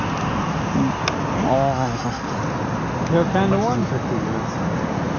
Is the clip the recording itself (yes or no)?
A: yes